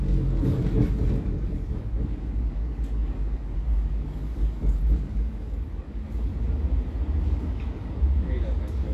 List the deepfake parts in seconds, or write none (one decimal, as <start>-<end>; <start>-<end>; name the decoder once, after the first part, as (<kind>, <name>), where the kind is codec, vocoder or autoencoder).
0.0-6.3 (codec, DAC); 7.2-8.9